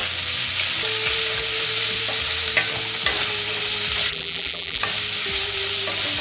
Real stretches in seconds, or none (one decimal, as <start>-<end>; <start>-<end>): 0.0-4.1; 4.8-6.2